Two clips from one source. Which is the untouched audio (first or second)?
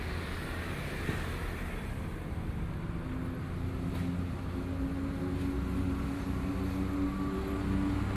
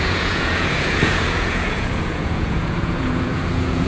first